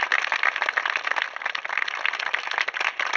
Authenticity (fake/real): real